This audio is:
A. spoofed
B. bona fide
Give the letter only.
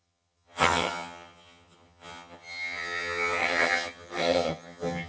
A